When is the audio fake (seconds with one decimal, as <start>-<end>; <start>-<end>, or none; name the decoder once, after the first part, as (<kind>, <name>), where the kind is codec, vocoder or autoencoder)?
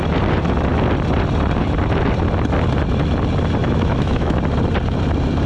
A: 3.6-4.4 (autoencoder, DAC-VAE)